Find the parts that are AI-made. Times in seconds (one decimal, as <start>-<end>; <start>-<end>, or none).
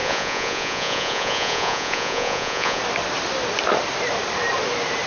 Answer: 0.0-2.8